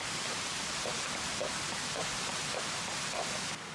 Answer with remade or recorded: recorded